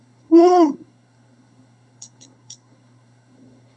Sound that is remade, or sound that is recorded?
remade